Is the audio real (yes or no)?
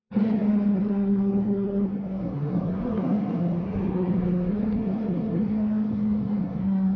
no